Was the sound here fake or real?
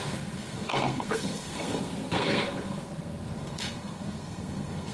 fake